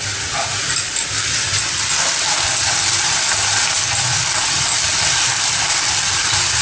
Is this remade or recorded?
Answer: recorded